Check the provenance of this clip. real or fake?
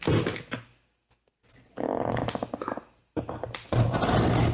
real